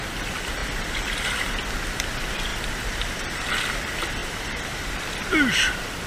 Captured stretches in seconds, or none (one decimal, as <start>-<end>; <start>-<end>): 0.0-2.5; 3.6-4.2; 4.9-6.1

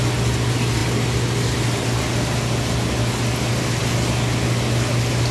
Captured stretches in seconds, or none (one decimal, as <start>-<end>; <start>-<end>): 0.0-5.3